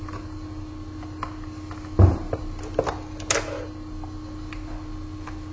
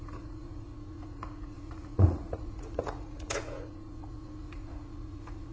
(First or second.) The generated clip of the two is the second